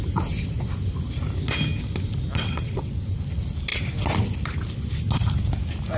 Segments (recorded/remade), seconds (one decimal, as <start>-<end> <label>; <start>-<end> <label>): 0.0-2.4 recorded; 2.4-2.9 remade; 2.9-6.0 recorded